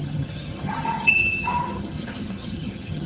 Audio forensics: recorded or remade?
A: remade